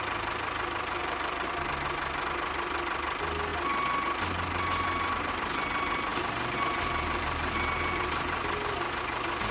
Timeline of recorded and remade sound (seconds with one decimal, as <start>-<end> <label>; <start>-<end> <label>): 0.0-1.0 recorded; 1.0-1.5 remade; 1.5-6.1 recorded; 6.1-9.0 remade; 9.0-9.5 recorded